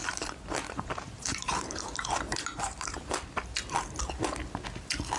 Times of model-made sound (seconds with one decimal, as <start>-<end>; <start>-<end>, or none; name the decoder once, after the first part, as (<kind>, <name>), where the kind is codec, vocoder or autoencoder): 0.0-3.1 (vocoder, BigVGAN v2)

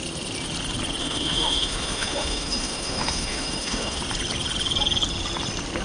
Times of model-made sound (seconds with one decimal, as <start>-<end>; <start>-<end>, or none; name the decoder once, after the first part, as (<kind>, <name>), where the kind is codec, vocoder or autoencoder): 1.0-4.0 (autoencoder, DAC-VAE)

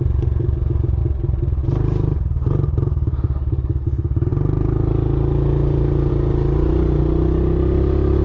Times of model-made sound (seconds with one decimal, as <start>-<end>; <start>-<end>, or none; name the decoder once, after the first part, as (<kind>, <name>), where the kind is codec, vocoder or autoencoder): none

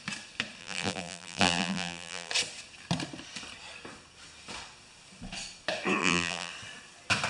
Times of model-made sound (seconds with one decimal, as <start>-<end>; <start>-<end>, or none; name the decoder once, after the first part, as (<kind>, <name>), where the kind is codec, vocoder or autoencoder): 0.6-2.3 (vocoder, BigVGAN v2); 6.0-6.5